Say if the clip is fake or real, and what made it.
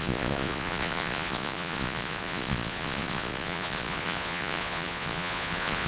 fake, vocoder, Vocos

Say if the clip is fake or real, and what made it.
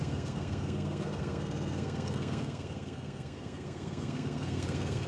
fake, codec, SNAC